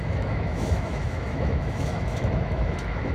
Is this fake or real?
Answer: fake